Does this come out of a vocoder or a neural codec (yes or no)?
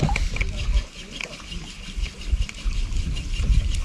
no